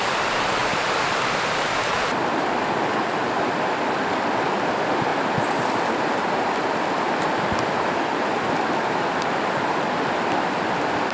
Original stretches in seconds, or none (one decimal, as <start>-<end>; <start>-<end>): none